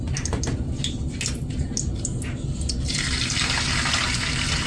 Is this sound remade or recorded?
recorded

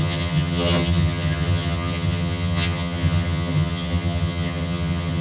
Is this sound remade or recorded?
remade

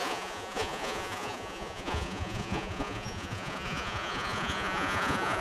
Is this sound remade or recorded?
remade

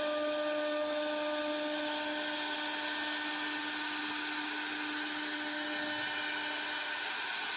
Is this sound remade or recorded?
recorded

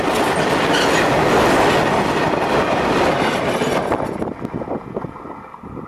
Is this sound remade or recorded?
recorded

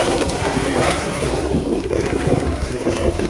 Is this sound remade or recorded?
remade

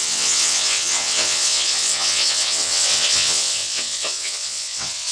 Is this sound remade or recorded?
remade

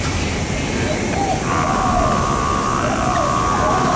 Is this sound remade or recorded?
recorded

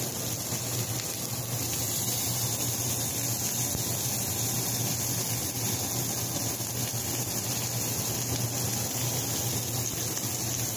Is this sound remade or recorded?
recorded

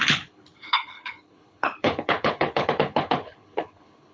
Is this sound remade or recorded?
remade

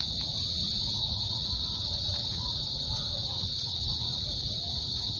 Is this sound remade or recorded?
remade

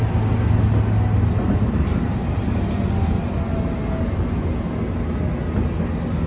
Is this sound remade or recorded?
recorded